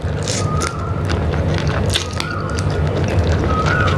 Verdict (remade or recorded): recorded